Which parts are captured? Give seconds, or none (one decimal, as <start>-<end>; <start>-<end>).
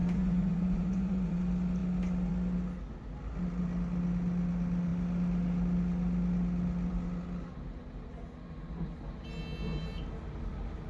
1.4-10.9